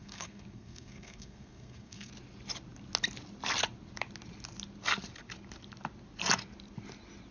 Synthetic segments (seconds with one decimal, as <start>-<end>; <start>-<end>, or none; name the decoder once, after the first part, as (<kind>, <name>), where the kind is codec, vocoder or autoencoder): 0.0-2.1 (codec, SNAC)

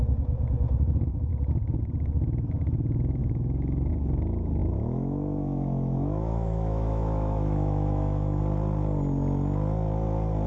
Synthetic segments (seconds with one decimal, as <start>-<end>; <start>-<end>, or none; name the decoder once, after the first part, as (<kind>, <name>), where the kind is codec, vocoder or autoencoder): 3.2-3.9 (autoencoder, DAC-VAE); 4.6-8.4

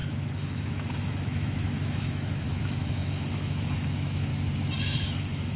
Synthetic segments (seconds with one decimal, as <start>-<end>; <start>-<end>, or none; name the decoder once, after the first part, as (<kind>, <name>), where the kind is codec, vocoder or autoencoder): 0.0-4.3 (autoencoder, DAC-VAE); 4.8-5.6

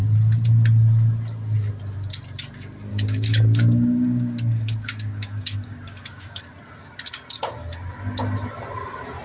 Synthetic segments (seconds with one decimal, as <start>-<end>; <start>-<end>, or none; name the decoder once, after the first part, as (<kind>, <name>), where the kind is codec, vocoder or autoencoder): 2.9-6.4 (codec, DAC)

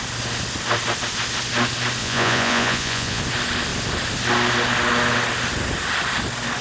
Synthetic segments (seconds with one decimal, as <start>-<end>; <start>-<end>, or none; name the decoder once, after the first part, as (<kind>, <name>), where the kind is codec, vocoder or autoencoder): 2.0-3.2 (vocoder, Vocos)

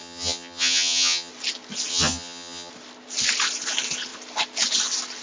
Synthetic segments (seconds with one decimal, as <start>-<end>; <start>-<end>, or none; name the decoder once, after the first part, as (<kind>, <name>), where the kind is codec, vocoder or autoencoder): 0.0-1.3 (vocoder, HiFi-GAN); 1.9-2.7

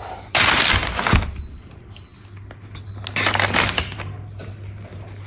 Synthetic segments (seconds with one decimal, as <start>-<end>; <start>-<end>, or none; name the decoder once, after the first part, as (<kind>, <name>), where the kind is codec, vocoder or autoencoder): none

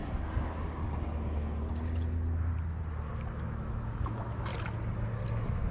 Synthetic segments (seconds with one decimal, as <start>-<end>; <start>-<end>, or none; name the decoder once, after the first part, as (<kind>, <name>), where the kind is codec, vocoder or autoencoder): 3.4-4.5 (autoencoder, DAC-VAE)